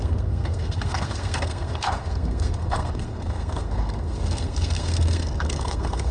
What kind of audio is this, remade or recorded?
remade